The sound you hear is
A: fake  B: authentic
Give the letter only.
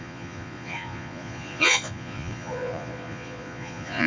A